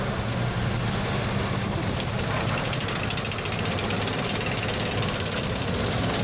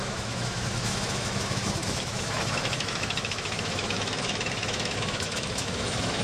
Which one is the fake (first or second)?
second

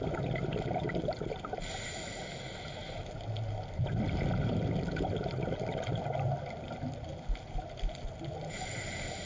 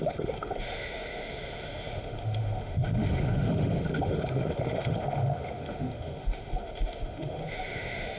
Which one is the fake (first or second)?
second